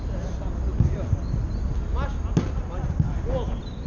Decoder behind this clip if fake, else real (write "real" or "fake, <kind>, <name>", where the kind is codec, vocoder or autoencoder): real